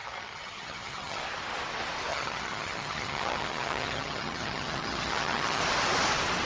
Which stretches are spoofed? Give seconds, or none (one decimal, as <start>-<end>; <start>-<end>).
0.0-1.2; 2.1-5.6